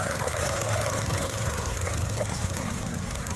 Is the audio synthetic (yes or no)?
yes